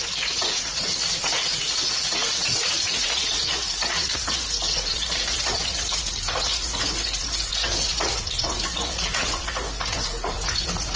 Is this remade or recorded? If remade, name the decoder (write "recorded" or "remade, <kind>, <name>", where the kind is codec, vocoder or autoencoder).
remade, vocoder, Vocos